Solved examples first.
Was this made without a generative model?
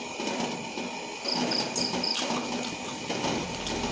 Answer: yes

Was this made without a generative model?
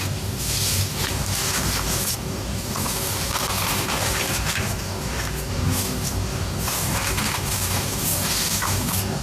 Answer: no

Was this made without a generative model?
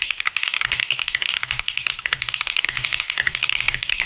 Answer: no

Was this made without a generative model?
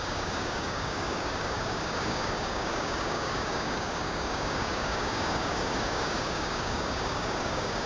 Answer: no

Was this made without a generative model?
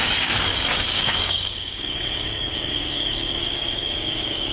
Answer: no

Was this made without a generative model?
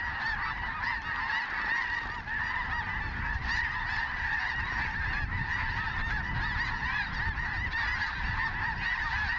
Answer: yes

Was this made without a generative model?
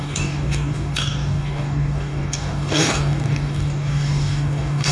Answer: no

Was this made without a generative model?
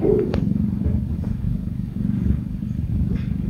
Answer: no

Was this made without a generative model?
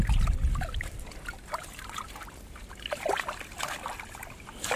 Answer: yes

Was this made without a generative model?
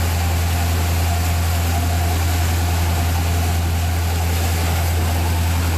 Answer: yes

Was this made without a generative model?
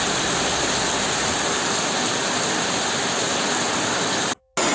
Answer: yes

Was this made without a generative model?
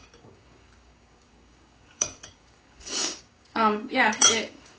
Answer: no